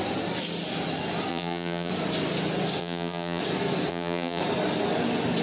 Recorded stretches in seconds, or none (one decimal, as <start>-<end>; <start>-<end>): 0.0-1.3; 1.9-2.8; 3.4-3.9; 4.4-5.4